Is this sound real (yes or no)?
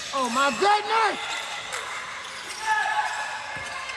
yes